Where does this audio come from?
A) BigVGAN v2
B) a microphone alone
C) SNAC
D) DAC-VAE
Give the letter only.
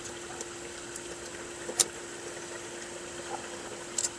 A